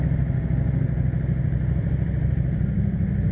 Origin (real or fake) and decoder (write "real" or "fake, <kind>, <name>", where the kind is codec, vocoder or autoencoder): real